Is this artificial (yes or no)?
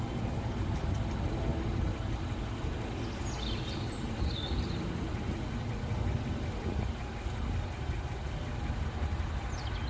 no